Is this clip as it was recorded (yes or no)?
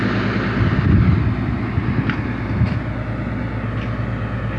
yes